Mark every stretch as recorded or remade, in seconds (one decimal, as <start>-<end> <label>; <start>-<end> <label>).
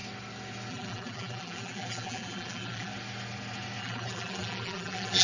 0.0-0.7 recorded; 0.7-2.9 remade; 2.9-3.8 recorded; 3.8-5.2 remade